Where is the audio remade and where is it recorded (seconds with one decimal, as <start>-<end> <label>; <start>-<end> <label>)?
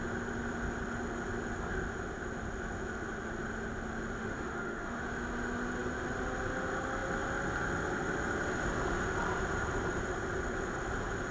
0.0-4.2 recorded; 4.2-5.0 remade; 5.0-11.3 recorded